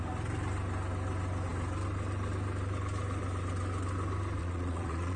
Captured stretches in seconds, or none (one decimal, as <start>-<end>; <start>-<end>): 0.0-4.4